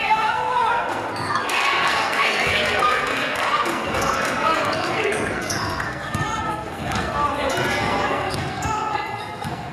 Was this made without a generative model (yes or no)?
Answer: no